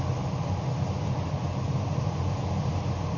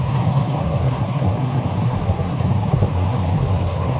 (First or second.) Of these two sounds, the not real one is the second